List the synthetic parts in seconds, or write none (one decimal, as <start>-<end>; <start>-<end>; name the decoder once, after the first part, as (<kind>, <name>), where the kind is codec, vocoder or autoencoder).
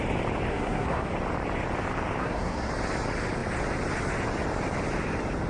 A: 0.5-1.1 (codec, SNAC); 2.2-2.7